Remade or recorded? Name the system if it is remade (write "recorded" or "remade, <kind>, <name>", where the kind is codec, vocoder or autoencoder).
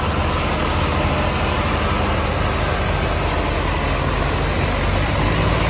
recorded